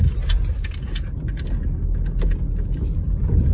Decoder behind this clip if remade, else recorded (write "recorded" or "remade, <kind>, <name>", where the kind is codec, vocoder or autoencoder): recorded